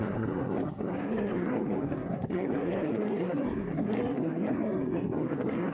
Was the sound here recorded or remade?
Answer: remade